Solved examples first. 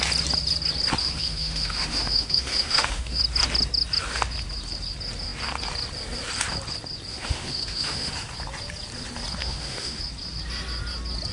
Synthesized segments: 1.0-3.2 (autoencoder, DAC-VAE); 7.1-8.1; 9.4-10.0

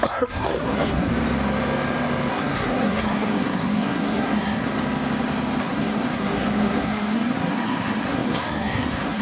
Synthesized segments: 0.0-1.1 (codec, SNAC); 2.3-4.7; 5.6-9.2

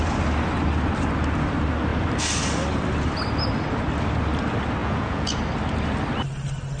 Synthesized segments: 4.8-5.4 (vocoder, Vocos)